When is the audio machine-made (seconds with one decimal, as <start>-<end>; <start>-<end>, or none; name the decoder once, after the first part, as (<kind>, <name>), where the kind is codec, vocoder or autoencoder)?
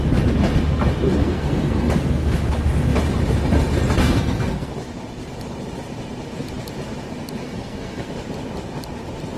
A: 1.2-2.5 (codec, SNAC); 4.0-4.7; 7.4-8.1